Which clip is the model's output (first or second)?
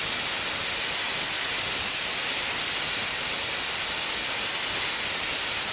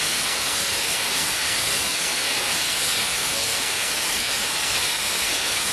second